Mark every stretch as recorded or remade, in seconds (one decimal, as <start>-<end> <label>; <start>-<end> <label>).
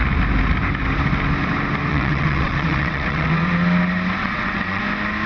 0.0-1.9 recorded; 1.9-3.5 remade; 3.5-4.2 recorded; 4.2-4.8 remade; 4.8-5.3 recorded